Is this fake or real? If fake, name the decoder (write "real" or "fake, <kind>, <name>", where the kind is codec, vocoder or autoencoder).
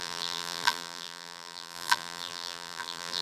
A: fake, vocoder, BigVGAN v2